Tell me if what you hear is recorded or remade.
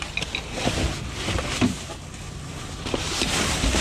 recorded